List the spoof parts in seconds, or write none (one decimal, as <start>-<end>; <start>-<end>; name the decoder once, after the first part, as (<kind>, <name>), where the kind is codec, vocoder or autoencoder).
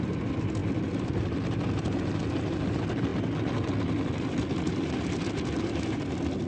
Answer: none